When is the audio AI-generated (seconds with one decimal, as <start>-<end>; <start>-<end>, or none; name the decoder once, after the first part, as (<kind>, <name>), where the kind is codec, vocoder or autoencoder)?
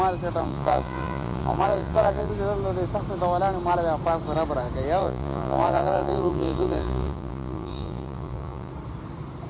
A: 0.4-2.3 (vocoder, Vocos); 5.0-8.7